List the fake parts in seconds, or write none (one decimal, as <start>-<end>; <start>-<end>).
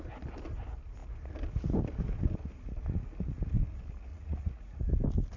4.1-4.9